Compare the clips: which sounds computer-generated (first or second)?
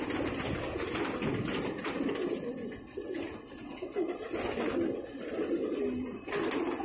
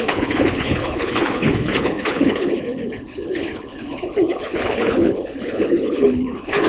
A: second